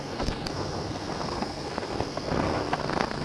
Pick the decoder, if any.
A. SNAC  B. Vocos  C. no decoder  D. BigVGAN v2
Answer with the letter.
A